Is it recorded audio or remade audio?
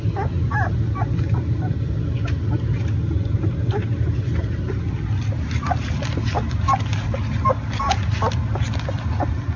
recorded